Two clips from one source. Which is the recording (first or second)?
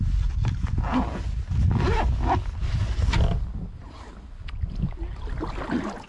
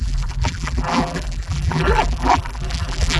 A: first